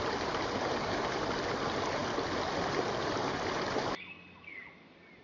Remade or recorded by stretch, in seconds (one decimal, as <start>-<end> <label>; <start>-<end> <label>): 0.0-5.2 recorded